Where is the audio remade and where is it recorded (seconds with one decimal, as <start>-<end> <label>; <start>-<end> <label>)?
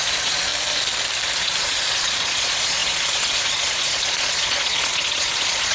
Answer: 0.0-0.5 remade; 0.5-1.4 recorded; 1.4-5.7 remade